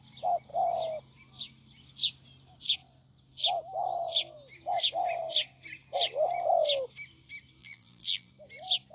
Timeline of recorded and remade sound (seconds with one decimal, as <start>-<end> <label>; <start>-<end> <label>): 0.0-7.6 recorded; 7.6-8.3 remade; 8.3-8.9 recorded